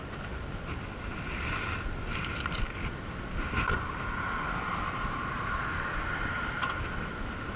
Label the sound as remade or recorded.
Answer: recorded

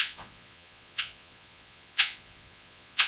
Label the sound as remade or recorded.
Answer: remade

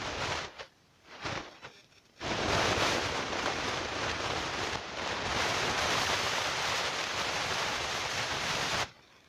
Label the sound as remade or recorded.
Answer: remade